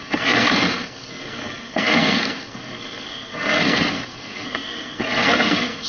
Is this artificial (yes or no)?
yes